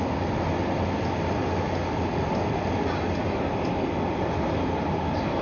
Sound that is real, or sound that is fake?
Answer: real